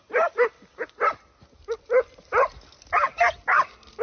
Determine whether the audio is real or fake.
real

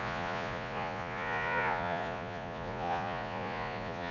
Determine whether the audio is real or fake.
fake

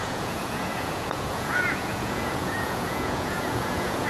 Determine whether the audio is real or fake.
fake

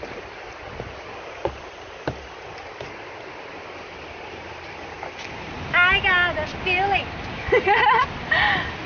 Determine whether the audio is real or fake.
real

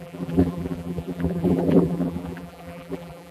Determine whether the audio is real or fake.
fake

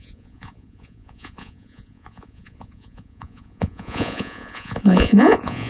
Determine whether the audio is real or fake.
fake